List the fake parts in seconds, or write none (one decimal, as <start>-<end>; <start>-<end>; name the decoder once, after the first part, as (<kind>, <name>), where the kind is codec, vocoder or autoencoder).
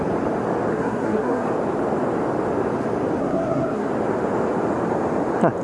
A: 0.7-1.5 (codec, SNAC); 3.2-3.9